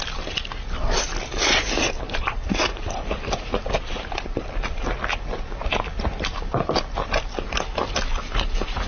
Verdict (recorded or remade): remade